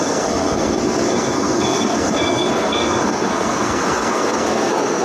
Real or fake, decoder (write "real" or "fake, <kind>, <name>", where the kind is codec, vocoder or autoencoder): fake, codec, SNAC